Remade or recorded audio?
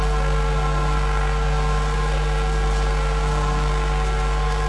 remade